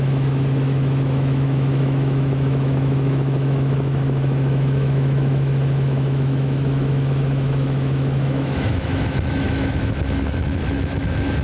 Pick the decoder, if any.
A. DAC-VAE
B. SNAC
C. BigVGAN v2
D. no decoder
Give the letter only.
A